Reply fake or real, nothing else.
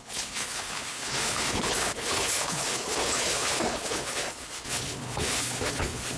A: fake